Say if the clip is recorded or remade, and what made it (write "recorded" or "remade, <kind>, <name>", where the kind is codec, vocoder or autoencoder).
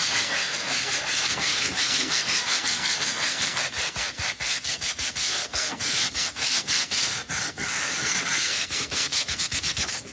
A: remade, codec, SNAC